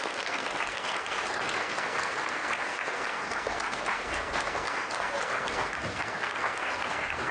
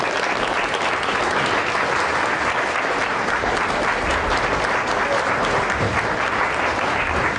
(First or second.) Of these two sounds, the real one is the second